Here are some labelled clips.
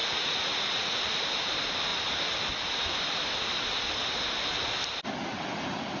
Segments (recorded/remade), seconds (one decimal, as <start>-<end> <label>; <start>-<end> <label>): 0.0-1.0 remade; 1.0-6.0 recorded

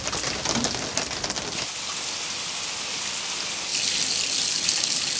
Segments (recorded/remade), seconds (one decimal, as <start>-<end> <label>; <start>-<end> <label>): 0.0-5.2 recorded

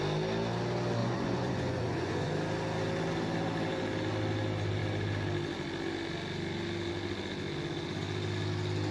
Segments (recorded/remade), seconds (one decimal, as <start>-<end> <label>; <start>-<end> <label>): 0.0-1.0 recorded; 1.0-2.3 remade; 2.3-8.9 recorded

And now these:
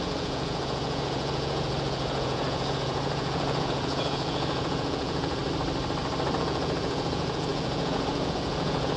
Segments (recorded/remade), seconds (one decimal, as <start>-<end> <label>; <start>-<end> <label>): 0.0-5.4 remade; 5.4-6.4 recorded; 6.4-9.0 remade

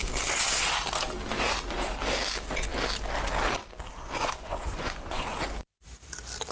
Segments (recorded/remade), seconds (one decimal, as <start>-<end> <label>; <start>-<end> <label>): 0.0-4.0 recorded; 4.0-5.4 remade; 5.4-6.5 recorded

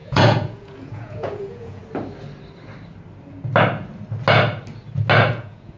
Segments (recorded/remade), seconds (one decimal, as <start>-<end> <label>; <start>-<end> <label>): 0.0-1.8 remade; 1.8-5.3 recorded; 5.3-5.8 remade